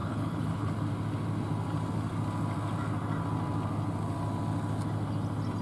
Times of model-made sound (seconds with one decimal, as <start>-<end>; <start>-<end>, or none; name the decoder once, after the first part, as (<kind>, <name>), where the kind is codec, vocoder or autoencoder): 0.0-0.7 (codec, HILCodec)